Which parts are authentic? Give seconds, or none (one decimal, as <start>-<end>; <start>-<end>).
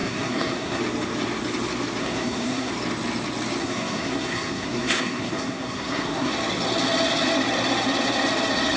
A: 0.8-2.0; 2.7-3.6; 6.3-8.8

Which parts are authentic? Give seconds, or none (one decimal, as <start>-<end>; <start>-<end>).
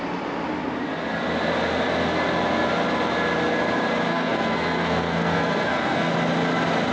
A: 0.0-4.1; 6.1-6.9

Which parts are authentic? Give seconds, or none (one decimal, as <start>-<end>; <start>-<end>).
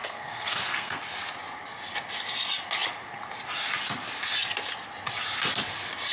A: 1.0-6.1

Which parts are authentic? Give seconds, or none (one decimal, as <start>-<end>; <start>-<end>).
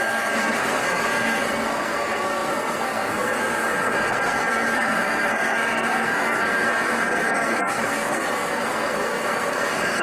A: none